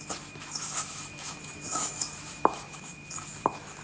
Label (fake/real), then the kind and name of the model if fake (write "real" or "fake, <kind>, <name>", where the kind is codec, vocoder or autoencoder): fake, autoencoder, DAC-VAE